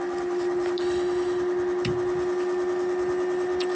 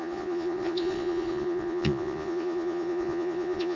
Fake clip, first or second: second